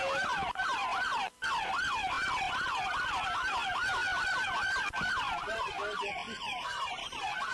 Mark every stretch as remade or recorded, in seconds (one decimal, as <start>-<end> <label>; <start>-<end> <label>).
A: 0.0-0.6 recorded; 0.6-1.1 remade; 1.1-7.5 recorded